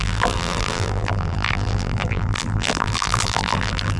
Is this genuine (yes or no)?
no